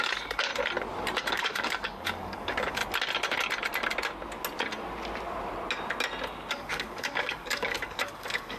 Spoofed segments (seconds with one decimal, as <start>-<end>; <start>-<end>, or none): 0.0-0.5; 1.3-2.8; 6.5-8.6